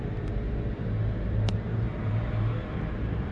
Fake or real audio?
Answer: fake